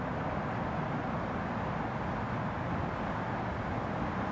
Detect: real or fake real